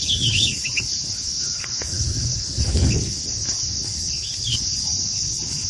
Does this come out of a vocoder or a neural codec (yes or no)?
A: yes